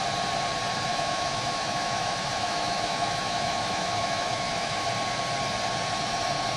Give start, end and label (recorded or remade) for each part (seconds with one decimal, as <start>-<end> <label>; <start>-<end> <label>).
0.0-0.9 recorded; 0.9-4.9 remade; 4.9-6.6 recorded